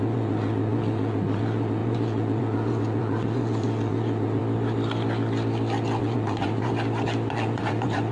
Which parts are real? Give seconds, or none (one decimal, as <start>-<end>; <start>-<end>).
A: 4.4-6.0; 6.7-7.3